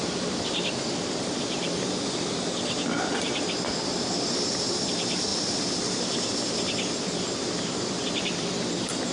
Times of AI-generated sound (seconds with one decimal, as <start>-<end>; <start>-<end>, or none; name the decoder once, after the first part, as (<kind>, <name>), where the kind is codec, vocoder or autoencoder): none